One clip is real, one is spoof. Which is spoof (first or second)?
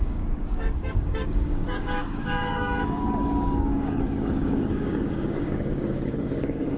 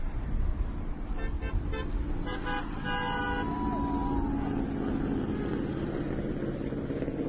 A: first